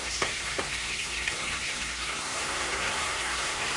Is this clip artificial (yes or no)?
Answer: yes